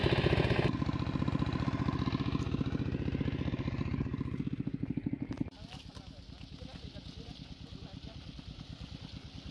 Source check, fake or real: real